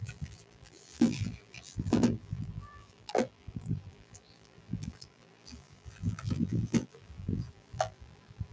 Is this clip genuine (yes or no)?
no